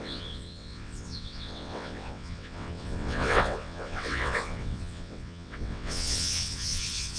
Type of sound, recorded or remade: remade